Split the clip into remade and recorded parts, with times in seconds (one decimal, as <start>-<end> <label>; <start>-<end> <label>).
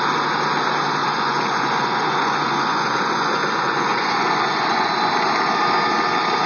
0.0-1.0 recorded; 1.0-4.9 remade; 4.9-6.5 recorded